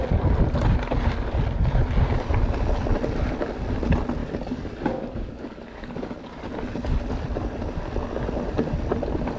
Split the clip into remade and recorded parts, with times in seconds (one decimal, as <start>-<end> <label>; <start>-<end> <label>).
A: 0.0-4.2 recorded; 4.2-6.2 remade; 6.2-9.4 recorded